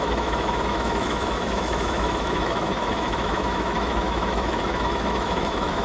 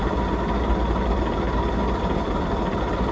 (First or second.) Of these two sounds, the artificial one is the first